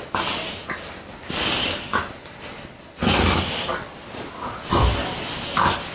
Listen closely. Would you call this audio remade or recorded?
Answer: recorded